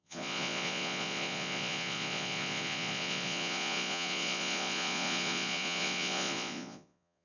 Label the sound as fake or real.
fake